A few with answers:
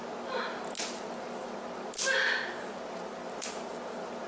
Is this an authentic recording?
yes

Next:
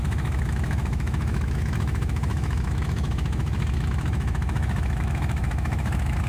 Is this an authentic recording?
no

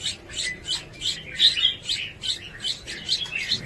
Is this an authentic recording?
yes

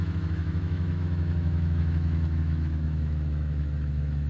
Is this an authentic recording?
no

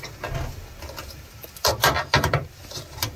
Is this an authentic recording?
yes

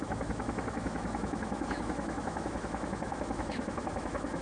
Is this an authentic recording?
no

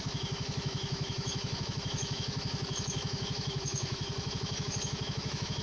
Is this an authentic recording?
no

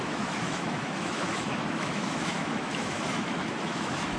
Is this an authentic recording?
no